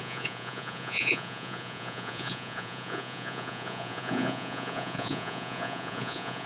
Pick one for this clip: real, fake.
fake